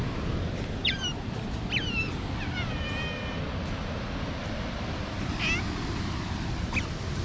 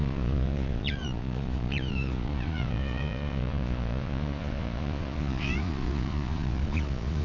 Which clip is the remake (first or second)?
second